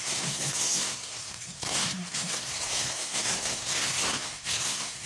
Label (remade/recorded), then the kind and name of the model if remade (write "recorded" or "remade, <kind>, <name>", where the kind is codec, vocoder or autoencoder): remade, codec, SNAC